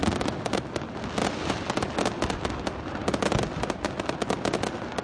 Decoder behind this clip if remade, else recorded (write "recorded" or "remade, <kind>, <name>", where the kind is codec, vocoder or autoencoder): recorded